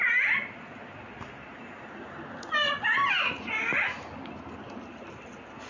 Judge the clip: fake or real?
real